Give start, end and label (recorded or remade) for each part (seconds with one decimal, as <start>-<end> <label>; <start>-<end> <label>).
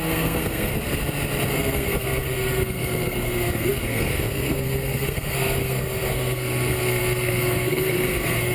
0.0-0.7 remade; 0.7-1.5 recorded; 1.5-8.5 remade